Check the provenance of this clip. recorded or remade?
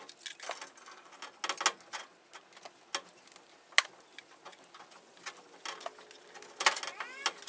recorded